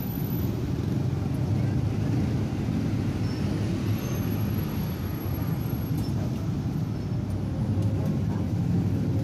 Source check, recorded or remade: recorded